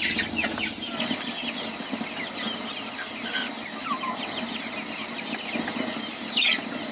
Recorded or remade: recorded